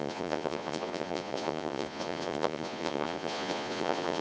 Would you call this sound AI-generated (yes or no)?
yes